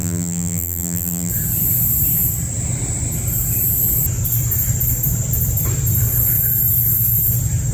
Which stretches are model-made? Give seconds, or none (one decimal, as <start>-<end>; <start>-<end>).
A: 0.0-1.3

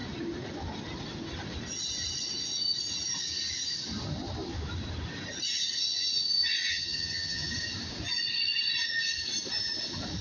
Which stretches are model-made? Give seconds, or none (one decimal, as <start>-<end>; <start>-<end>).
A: 6.7-7.5

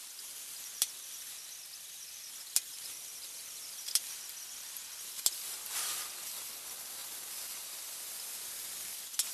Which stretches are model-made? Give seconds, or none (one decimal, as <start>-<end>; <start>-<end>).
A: none

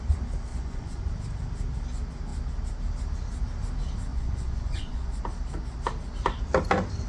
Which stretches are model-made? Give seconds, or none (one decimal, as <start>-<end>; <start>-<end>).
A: 0.5-1.1; 4.1-5.2

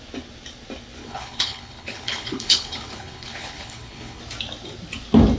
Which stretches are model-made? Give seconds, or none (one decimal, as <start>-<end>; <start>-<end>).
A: 1.0-4.2

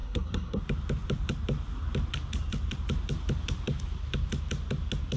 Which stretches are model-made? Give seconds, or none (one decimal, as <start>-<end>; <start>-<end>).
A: 0.0-0.6